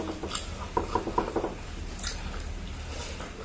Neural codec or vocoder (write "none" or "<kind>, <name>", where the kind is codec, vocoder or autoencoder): none